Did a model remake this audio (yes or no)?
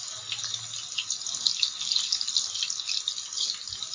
no